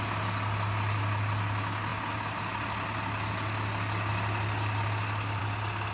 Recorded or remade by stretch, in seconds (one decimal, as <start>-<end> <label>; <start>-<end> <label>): 0.0-5.9 recorded